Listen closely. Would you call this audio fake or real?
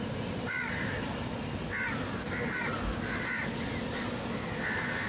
real